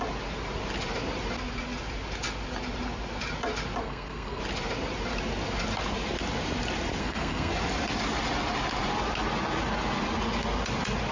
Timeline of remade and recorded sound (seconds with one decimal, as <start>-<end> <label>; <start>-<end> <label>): 0.0-3.8 recorded; 3.8-4.4 remade; 4.4-7.0 recorded; 7.0-7.5 remade; 7.5-11.1 recorded